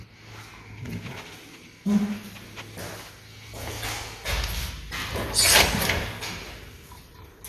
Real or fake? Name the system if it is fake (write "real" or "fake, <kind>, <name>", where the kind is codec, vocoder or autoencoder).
real